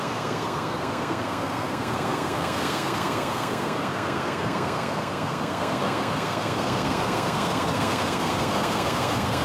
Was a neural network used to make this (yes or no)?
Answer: yes